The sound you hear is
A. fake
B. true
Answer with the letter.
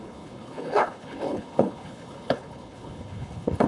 A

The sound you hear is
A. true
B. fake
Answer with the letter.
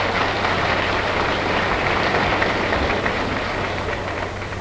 B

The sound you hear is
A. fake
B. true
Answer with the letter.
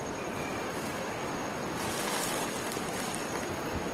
B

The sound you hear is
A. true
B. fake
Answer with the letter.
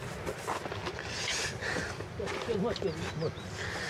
A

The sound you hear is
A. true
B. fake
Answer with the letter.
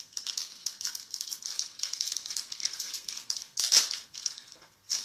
B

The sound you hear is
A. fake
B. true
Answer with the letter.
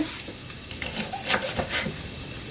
B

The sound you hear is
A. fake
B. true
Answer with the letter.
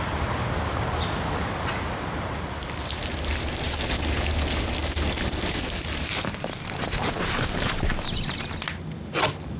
B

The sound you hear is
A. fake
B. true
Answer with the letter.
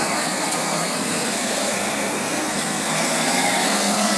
A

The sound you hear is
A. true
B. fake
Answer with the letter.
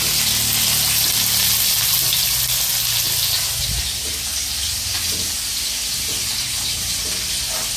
A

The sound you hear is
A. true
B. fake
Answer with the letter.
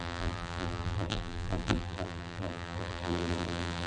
B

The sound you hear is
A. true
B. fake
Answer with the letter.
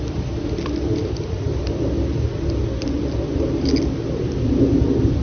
A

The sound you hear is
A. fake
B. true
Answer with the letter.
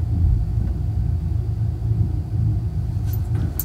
B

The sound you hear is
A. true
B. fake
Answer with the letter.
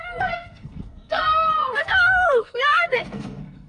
B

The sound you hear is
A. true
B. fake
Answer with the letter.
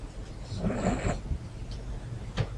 A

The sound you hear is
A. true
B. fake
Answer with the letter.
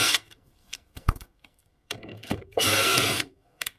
B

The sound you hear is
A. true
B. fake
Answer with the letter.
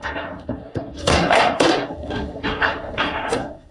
B